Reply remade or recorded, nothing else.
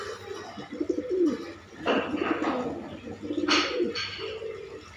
recorded